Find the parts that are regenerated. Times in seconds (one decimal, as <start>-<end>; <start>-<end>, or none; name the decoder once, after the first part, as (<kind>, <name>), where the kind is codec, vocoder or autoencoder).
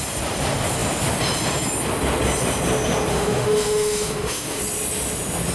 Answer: 3.1-4.6 (autoencoder, DAC-VAE)